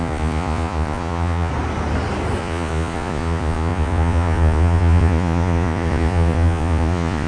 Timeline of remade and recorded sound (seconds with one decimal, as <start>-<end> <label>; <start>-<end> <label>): 0.0-1.5 remade; 1.5-2.4 recorded; 2.4-7.3 remade